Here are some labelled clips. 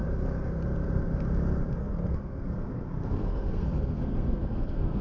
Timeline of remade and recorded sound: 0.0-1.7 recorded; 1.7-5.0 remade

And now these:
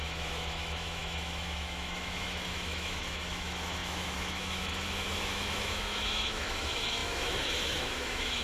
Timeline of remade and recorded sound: 0.0-8.4 remade

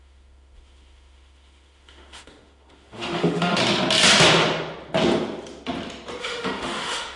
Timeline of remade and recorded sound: 0.0-3.6 remade; 3.6-6.2 recorded; 6.2-7.2 remade

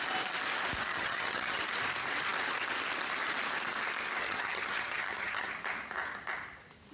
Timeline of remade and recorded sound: 0.0-0.9 recorded; 0.9-1.6 remade; 1.6-4.2 recorded; 4.2-5.5 remade; 5.5-6.9 recorded

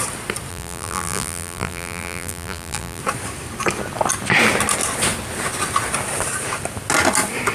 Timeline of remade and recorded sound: 0.0-0.5 recorded; 0.5-3.0 remade; 3.0-7.5 recorded

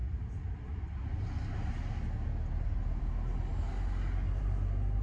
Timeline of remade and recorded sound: 0.0-5.0 recorded